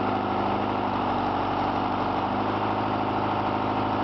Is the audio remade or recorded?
recorded